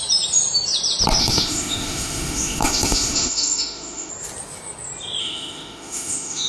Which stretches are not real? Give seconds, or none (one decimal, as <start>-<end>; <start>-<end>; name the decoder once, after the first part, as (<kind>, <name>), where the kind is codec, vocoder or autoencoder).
1.2-4.1 (autoencoder, DAC-VAE); 5.2-6.5